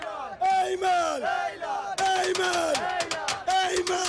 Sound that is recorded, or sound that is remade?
recorded